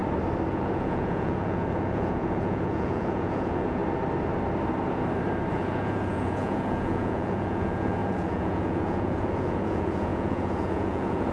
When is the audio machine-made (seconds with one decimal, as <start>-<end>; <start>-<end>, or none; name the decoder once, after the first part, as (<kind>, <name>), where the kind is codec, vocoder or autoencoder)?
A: 0.5-3.8 (vocoder, Vocos); 5.5-11.3